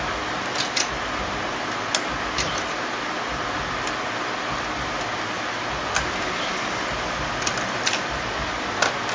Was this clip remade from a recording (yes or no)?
no